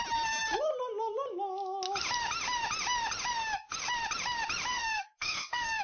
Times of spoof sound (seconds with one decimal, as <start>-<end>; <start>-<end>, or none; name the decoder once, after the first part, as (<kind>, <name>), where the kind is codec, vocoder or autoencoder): 4.7-5.8 (codec, SNAC)